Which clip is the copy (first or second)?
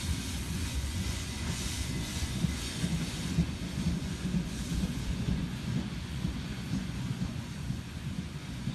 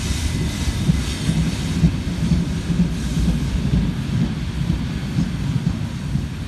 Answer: first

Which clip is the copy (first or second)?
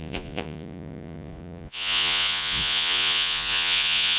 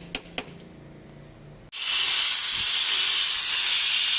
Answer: first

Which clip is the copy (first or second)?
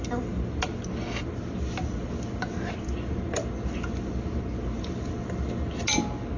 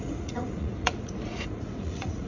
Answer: second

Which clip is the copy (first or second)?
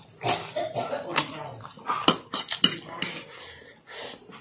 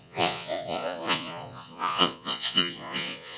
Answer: second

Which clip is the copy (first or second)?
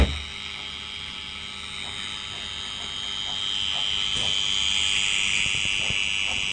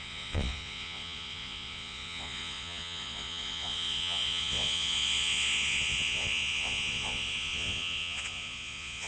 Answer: second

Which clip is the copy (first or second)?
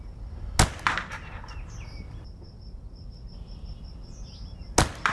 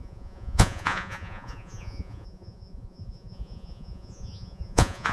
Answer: second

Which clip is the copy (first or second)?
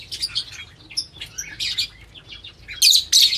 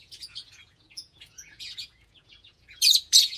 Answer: second